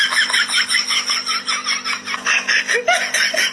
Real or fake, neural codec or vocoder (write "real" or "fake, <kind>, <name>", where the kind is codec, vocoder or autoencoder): real